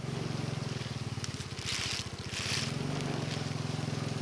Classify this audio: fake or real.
real